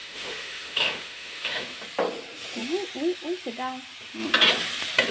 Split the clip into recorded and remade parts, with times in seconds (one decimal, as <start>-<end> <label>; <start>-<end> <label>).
0.0-1.8 remade; 1.8-5.1 recorded